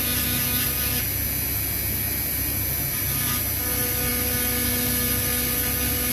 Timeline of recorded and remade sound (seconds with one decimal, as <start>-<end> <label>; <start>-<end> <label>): 0.0-6.1 recorded